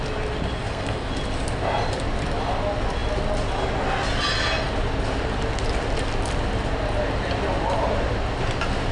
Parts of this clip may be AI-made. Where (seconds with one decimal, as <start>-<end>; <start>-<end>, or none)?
0.6-1.1